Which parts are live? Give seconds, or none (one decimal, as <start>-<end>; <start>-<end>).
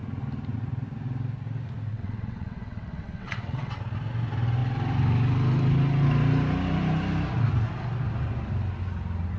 0.0-1.9; 3.8-9.4